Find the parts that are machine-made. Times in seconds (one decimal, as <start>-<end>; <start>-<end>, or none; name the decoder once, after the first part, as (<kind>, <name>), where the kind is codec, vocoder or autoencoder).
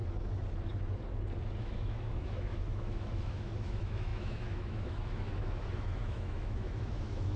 1.6-7.4 (autoencoder, DAC-VAE)